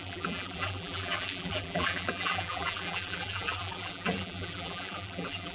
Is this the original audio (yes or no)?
no